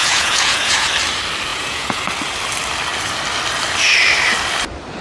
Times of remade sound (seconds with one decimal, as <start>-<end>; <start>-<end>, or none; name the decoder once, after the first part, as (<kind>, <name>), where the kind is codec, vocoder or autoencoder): 0.0-0.9 (vocoder, Vocos); 1.5-2.0